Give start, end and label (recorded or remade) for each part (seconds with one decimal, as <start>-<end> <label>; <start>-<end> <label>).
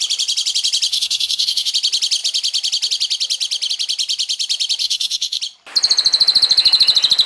0.0-0.9 recorded; 0.9-1.7 remade; 1.7-4.8 recorded; 4.8-5.4 remade; 5.4-7.3 recorded